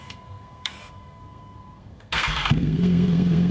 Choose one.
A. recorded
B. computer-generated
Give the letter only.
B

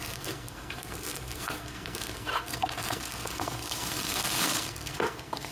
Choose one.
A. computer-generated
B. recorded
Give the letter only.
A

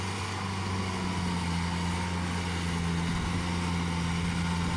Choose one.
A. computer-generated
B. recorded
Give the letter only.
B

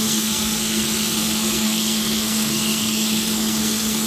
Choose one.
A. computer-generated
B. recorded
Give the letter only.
A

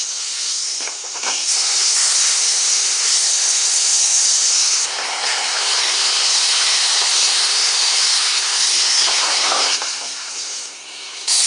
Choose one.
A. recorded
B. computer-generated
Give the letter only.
B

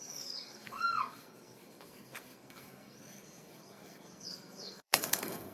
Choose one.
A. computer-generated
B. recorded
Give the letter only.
A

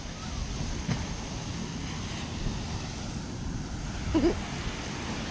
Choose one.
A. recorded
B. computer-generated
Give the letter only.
A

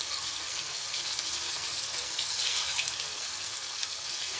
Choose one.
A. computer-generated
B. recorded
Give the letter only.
A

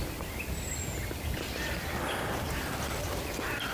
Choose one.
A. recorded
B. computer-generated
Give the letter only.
A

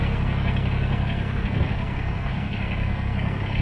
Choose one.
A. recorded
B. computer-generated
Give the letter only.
B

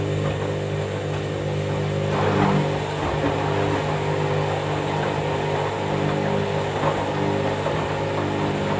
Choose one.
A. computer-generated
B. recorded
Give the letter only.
B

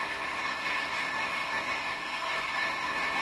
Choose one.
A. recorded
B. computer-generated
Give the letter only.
B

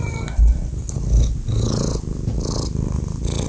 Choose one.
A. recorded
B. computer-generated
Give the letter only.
A